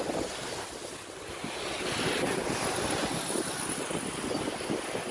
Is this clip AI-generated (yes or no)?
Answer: no